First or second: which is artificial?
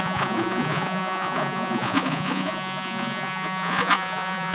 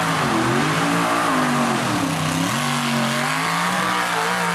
first